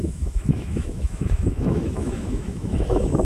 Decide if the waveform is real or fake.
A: fake